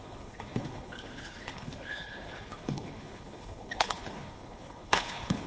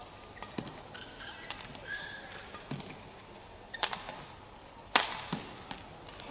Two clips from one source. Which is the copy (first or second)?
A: first